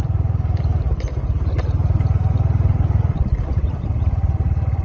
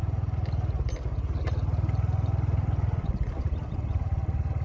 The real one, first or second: second